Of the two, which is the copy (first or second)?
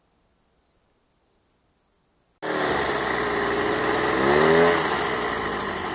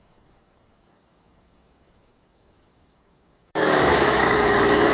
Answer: second